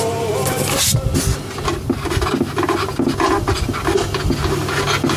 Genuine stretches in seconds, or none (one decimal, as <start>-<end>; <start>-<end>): 0.0-5.2